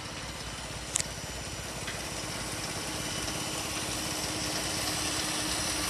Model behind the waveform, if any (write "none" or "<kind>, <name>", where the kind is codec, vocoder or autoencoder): none